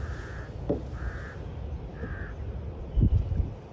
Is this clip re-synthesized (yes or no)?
no